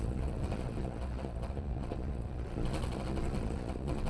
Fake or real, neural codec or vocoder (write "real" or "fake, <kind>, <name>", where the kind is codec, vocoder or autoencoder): fake, vocoder, Vocos